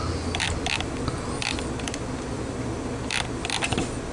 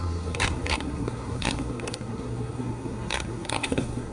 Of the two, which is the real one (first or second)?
first